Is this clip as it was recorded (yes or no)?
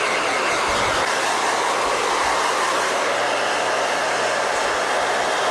yes